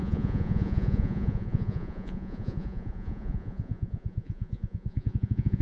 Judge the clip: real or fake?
fake